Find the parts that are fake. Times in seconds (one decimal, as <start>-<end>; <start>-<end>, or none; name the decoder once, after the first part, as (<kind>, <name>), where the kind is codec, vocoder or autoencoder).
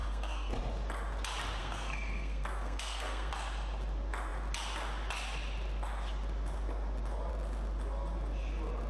0.0-0.5 (codec, SNAC); 1.6-3.3